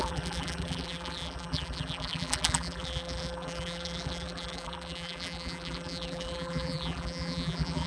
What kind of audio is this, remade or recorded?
remade